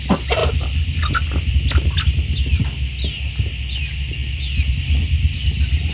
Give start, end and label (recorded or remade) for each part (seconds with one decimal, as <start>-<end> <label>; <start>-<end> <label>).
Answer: 0.0-5.9 recorded